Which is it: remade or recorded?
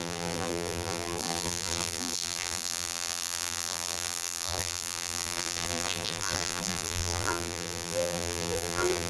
remade